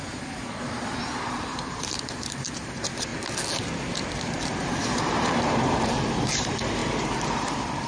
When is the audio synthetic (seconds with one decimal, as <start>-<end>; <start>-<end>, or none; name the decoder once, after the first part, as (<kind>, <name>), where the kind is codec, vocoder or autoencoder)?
0.0-3.1 (vocoder, BigVGAN v2); 4.3-7.9